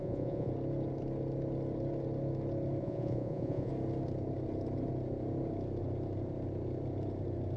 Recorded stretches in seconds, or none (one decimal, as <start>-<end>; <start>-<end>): 0.5-2.8; 3.7-7.6